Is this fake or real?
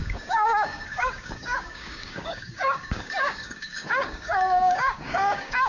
fake